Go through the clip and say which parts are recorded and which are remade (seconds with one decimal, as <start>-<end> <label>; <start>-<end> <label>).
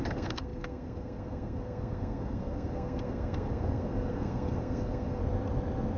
0.0-5.2 remade; 5.2-6.0 recorded